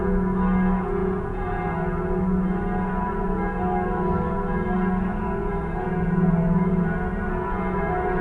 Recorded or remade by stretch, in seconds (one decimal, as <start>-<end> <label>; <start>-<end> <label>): 0.0-1.0 recorded; 1.0-1.6 remade; 1.6-5.4 recorded; 5.4-6.8 remade; 6.8-8.2 recorded